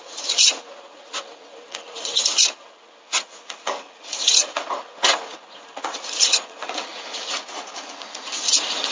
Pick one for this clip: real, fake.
fake